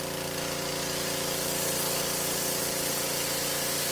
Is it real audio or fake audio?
real